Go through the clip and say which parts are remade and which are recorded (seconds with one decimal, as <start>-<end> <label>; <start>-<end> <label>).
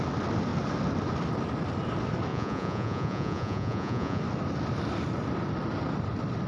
0.0-2.3 recorded; 2.3-4.2 remade; 4.2-6.5 recorded